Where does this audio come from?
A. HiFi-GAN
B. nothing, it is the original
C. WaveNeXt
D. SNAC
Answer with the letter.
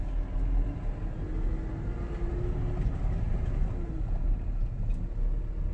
B